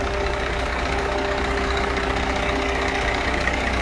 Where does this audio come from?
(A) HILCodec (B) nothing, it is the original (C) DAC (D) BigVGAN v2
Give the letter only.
C